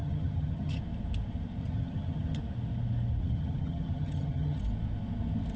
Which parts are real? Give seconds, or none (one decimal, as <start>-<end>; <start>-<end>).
0.8-1.6; 2.4-3.2; 4.6-5.6